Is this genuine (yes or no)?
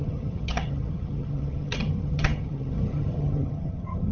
no